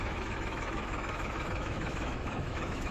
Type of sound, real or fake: fake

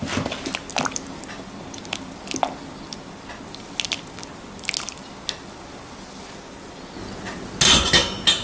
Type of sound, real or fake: real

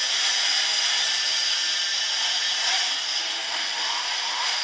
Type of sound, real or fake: real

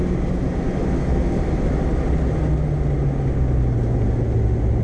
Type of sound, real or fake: real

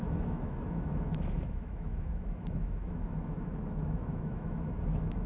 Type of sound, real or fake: fake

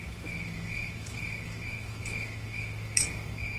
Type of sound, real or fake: fake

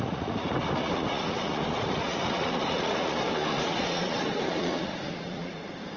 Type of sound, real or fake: fake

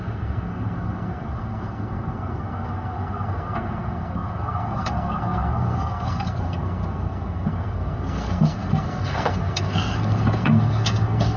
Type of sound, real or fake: fake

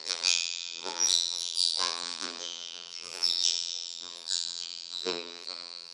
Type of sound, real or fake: fake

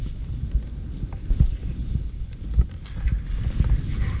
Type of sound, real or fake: real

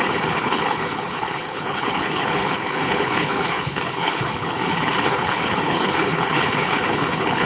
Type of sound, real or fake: fake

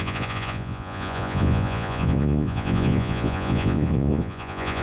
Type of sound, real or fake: fake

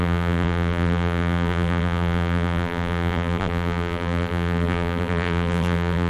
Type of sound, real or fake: fake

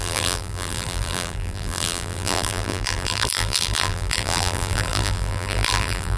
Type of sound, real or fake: fake